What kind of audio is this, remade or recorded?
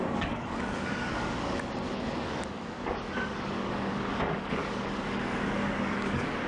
remade